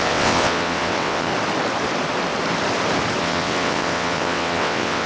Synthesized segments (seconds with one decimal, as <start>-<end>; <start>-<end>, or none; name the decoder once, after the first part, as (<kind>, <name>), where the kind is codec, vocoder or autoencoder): 0.0-1.3 (vocoder, WaveNeXt); 3.2-5.1